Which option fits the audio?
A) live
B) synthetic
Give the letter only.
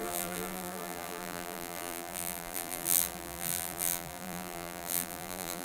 B